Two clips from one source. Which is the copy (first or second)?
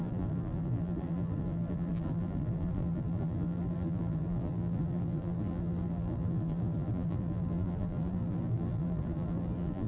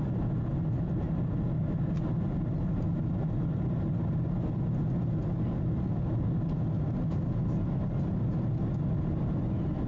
first